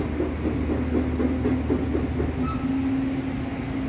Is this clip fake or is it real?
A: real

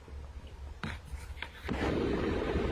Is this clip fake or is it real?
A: fake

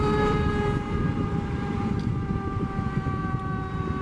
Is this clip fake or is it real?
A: fake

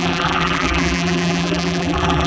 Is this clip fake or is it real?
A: fake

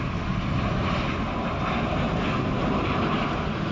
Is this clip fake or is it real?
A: real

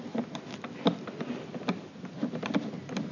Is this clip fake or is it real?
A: real